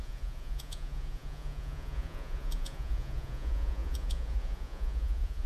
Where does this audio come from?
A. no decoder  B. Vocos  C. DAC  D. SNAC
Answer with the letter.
B